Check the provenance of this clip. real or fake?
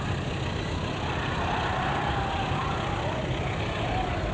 real